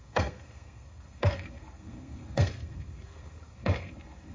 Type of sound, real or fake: fake